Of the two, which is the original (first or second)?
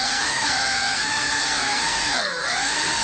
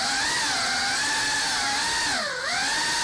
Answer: second